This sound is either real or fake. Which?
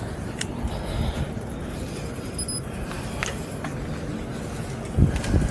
real